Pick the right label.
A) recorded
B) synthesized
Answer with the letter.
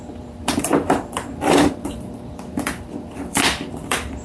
B